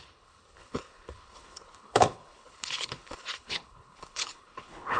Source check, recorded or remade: remade